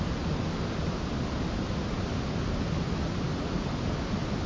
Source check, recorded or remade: recorded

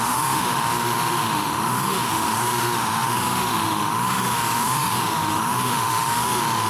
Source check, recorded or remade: remade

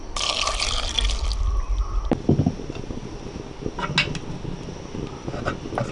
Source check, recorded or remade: recorded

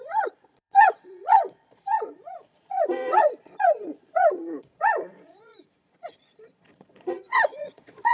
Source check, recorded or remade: remade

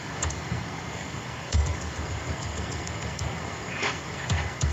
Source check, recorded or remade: remade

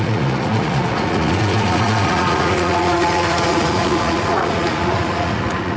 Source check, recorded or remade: remade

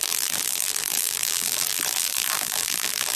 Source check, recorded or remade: remade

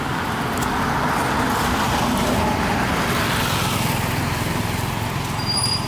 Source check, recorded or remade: recorded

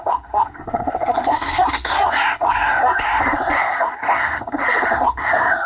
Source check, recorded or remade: remade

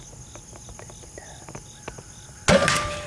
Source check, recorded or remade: recorded